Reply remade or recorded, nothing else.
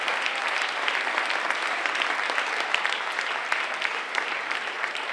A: recorded